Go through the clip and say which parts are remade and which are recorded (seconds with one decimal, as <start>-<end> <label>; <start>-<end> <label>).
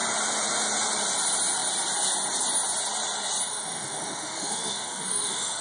0.0-3.5 recorded; 3.5-5.6 remade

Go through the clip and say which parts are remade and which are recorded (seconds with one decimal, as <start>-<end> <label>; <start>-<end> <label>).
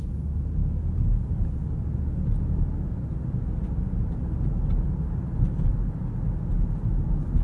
0.0-7.4 recorded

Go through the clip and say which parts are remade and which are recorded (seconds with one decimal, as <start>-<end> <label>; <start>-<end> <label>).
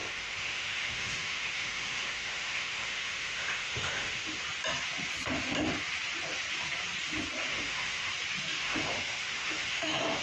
0.0-4.4 remade; 4.4-7.5 recorded; 7.5-8.1 remade; 8.1-8.6 recorded; 8.6-10.2 remade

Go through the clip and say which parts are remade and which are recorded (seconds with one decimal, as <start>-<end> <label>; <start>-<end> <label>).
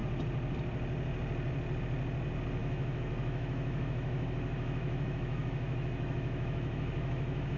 0.0-2.6 recorded; 2.6-7.6 remade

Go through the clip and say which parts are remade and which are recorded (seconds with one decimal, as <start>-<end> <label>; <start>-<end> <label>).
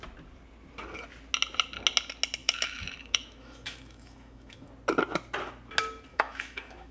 0.0-2.4 recorded; 2.4-4.7 remade; 4.7-6.1 recorded; 6.1-6.9 remade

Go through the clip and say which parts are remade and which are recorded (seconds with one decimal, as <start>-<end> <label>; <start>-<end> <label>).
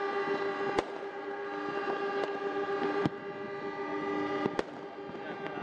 0.0-5.6 recorded